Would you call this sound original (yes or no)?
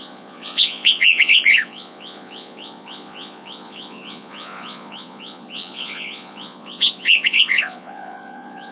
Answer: no